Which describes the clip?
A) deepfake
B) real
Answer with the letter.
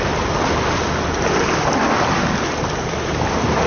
B